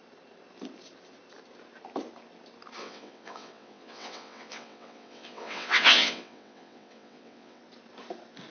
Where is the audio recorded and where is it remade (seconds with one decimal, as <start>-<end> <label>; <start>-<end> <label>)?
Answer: 0.0-2.8 recorded; 2.8-7.6 remade; 7.6-8.5 recorded